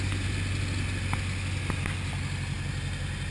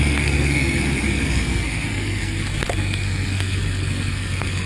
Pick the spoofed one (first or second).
second